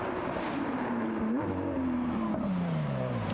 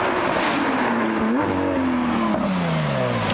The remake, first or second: first